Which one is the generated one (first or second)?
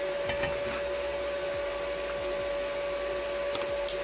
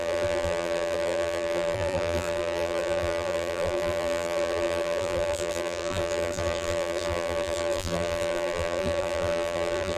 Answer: second